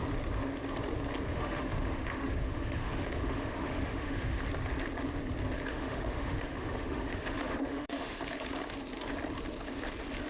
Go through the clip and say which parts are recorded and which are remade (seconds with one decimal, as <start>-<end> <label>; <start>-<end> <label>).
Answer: 0.0-1.3 recorded; 1.3-4.4 remade; 4.4-5.7 recorded; 5.7-8.2 remade; 8.2-10.3 recorded